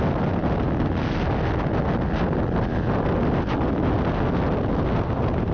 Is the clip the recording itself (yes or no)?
yes